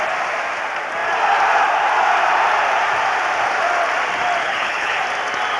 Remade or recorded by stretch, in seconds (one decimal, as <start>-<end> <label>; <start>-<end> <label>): 0.0-4.4 recorded; 4.4-5.0 remade; 5.0-5.6 recorded

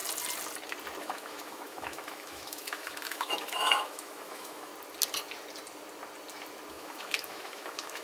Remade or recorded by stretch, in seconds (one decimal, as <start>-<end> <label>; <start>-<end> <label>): 0.0-1.0 recorded; 1.0-4.7 remade; 4.7-6.7 recorded; 6.7-8.0 remade